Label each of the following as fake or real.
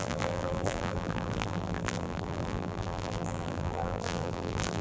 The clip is fake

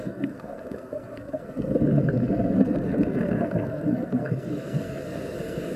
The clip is fake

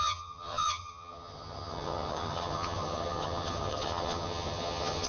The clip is fake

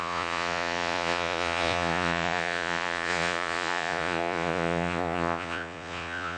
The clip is fake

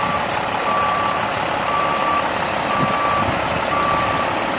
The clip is real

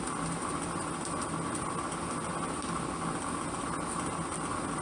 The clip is real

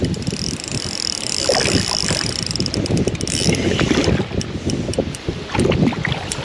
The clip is real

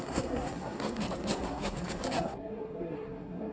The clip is fake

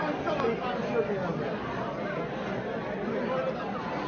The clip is real